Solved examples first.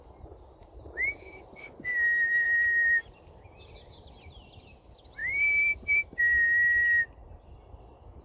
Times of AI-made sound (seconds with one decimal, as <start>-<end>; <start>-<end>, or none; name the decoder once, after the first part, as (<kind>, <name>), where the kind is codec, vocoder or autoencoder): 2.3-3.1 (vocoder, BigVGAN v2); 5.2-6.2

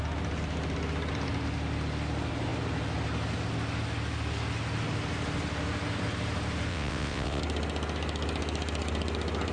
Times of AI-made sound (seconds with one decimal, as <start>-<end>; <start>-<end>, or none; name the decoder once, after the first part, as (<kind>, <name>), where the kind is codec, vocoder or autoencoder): 6.7-7.4 (vocoder, WaveNeXt)

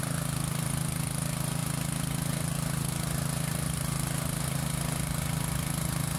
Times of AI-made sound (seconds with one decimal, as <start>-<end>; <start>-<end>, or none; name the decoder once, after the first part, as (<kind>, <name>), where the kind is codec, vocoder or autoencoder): none

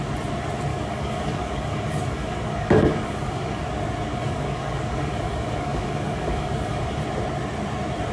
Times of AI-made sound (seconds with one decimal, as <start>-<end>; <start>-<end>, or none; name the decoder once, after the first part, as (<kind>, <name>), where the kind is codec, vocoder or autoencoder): 0.7-3.6 (codec, DAC); 4.1-7.0